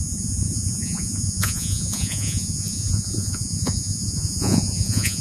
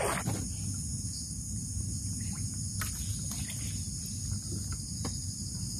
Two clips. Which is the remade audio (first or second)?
first